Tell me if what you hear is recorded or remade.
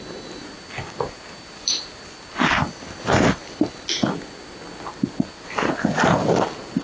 recorded